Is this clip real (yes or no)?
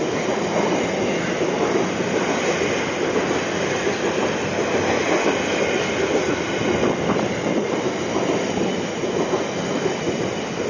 yes